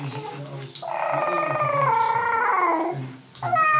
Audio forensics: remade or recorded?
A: recorded